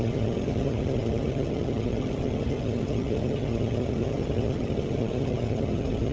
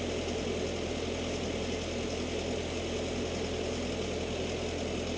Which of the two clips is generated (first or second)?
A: first